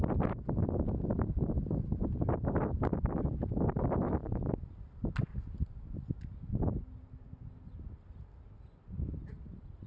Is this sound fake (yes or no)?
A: no